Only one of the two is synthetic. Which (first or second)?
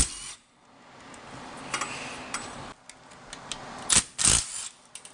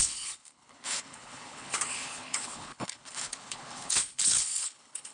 second